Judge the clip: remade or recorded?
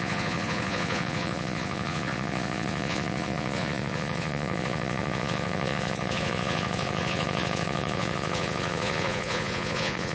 remade